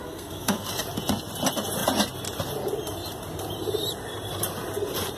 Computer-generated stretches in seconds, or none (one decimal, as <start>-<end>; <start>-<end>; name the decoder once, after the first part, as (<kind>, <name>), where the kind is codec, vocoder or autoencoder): 0.0-0.7 (codec, SNAC)